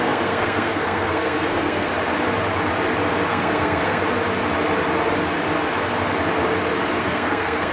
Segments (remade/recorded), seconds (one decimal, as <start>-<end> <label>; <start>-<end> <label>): 0.0-1.9 remade; 1.9-3.3 recorded; 3.3-4.0 remade; 4.0-7.0 recorded; 7.0-7.7 remade